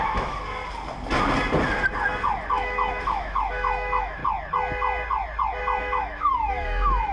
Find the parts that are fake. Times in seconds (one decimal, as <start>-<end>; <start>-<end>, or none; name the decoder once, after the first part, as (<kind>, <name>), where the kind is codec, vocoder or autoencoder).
0.0-0.6 (autoencoder, DAC-VAE); 2.5-4.2; 5.8-7.1